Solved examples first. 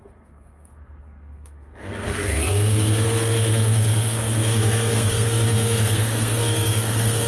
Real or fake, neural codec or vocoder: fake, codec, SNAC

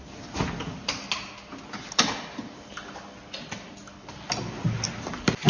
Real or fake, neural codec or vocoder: real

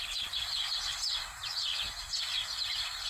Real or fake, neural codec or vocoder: real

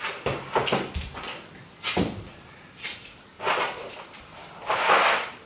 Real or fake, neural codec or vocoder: real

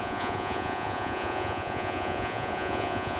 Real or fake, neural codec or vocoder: fake, vocoder, Vocos